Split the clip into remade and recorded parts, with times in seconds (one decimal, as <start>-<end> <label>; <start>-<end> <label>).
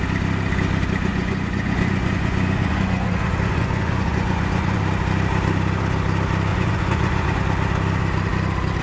0.0-1.1 recorded; 1.1-4.8 remade; 4.8-6.5 recorded; 6.5-7.4 remade; 7.4-8.8 recorded